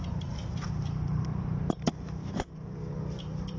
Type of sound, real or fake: fake